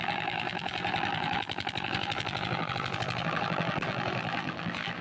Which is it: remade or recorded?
remade